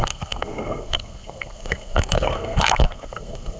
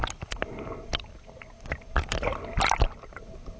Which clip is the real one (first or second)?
second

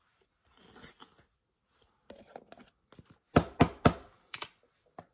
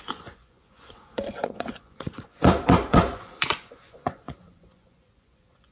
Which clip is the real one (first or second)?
first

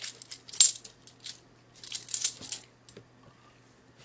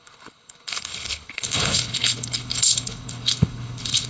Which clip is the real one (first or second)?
first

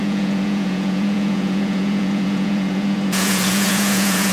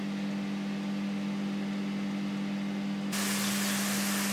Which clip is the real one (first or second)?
second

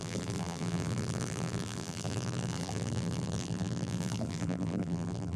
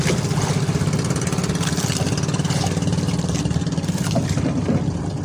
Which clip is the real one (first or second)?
second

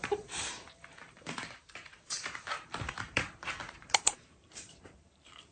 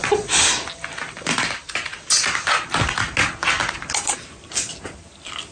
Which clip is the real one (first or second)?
second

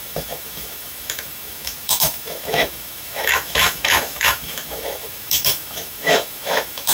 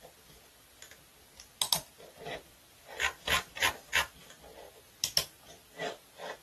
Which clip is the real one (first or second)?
second